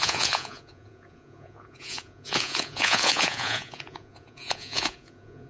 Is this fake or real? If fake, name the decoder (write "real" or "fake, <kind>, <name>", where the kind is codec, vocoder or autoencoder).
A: fake, vocoder, Vocos